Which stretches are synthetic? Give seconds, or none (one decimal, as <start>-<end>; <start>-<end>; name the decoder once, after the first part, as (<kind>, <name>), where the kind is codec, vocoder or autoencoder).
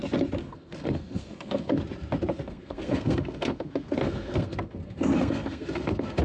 0.4-1.8 (codec, SNAC); 2.3-6.2